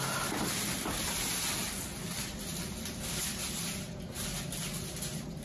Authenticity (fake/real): real